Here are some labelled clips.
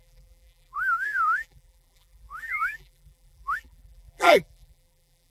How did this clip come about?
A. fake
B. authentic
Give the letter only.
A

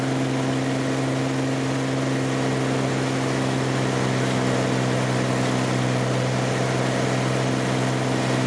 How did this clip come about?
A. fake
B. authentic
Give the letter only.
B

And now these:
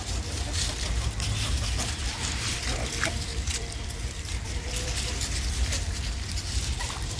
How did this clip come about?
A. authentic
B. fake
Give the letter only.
B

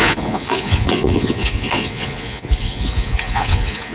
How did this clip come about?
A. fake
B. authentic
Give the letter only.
A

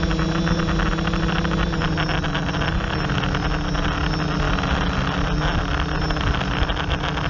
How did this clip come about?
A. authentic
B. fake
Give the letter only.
A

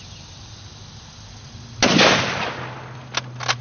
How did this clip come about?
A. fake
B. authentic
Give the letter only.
B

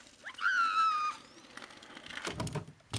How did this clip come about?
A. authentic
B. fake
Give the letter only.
A